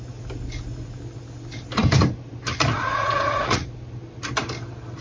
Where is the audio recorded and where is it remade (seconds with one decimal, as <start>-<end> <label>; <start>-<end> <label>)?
0.0-2.7 recorded; 2.7-3.7 remade; 3.7-5.0 recorded